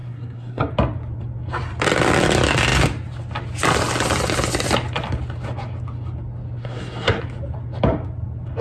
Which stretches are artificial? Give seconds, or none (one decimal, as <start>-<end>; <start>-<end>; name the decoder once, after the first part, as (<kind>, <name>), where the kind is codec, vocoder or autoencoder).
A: 0.0-0.7 (codec, SNAC); 6.6-7.2